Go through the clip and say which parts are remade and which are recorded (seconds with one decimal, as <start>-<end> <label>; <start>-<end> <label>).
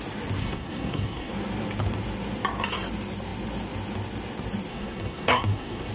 0.0-0.4 recorded; 0.4-1.3 remade; 1.3-4.7 recorded; 4.7-5.9 remade